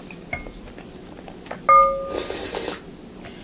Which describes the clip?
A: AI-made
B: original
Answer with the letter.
B